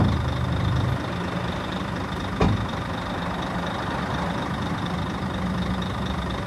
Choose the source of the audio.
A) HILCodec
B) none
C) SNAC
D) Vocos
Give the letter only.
B